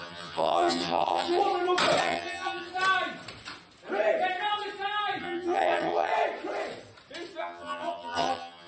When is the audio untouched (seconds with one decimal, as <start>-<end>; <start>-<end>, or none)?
1.4-2.0; 2.7-5.2; 6.1-7.4